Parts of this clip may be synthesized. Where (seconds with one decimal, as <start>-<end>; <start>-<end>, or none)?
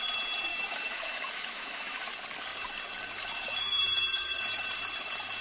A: 0.5-2.1; 3.6-4.4